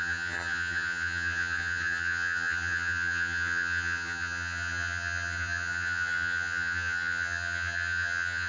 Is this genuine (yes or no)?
no